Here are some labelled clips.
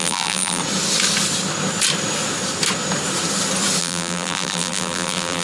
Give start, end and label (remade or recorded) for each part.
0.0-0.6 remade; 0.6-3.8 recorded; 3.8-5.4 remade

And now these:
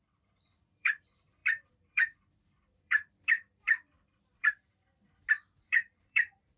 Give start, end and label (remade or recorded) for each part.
0.0-6.6 remade

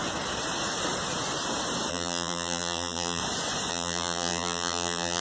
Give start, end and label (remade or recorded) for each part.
0.0-1.9 recorded; 1.9-3.2 remade; 3.2-3.7 recorded; 3.7-5.2 remade